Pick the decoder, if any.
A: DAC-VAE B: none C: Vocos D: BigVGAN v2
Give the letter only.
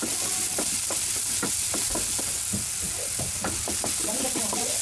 B